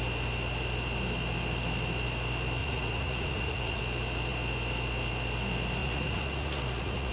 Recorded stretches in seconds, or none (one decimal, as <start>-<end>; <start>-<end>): 0.0-2.6; 3.8-5.8